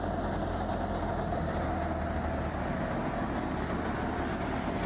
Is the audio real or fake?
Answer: real